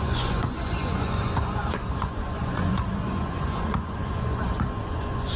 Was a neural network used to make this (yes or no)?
yes